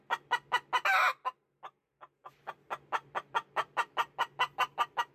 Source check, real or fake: real